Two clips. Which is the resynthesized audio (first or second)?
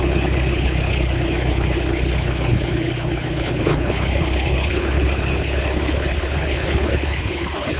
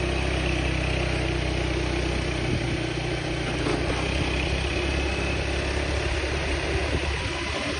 first